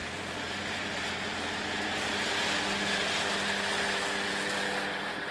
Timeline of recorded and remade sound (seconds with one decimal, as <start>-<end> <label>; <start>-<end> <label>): 0.0-2.3 remade; 2.3-5.3 recorded